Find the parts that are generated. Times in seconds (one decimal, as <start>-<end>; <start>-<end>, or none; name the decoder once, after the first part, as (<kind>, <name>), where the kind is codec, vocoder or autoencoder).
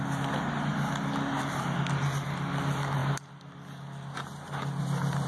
none